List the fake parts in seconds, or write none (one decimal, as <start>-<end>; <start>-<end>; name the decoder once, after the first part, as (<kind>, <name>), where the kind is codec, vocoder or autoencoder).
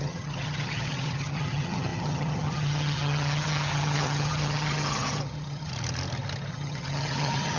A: 0.0-5.7 (vocoder, HiFi-GAN); 6.5-7.6